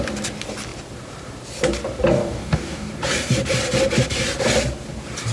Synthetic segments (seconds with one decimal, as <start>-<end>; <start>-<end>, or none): 2.2-2.9